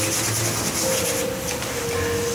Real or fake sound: real